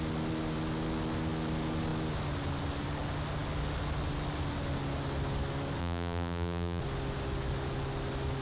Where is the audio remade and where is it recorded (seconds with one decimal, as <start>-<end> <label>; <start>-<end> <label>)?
0.0-5.8 recorded; 5.8-6.8 remade; 6.8-8.4 recorded